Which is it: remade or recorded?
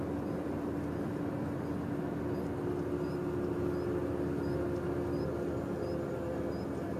recorded